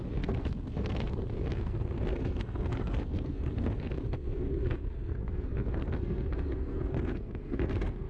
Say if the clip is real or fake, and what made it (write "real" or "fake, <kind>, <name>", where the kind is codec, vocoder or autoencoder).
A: fake, codec, SNAC